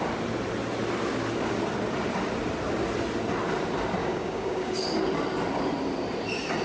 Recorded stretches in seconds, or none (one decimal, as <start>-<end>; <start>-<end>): 0.0-4.0; 4.7-6.6